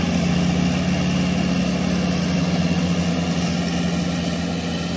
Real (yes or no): yes